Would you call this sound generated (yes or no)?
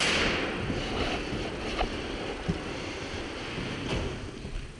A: no